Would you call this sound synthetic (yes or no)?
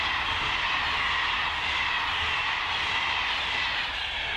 no